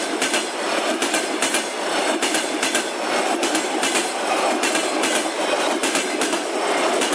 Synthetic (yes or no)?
no